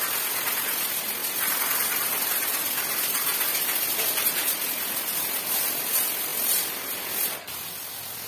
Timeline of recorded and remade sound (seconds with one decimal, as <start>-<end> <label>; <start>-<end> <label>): 0.0-8.3 recorded